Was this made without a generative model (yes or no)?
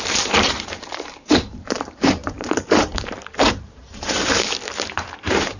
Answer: no